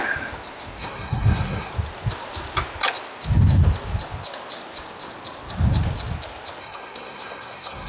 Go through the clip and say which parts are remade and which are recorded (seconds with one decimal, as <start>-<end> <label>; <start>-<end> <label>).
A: 0.0-0.8 recorded; 0.8-1.7 remade; 1.7-6.6 recorded; 6.6-7.9 remade